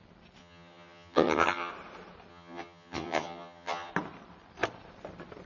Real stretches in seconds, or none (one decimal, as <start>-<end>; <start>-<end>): 0.0-0.4; 1.7-2.3; 3.9-5.5